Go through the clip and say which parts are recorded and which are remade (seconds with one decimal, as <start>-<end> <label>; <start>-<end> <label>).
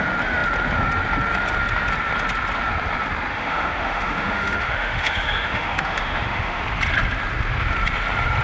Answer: 0.0-3.3 recorded; 3.3-6.6 remade; 6.6-8.4 recorded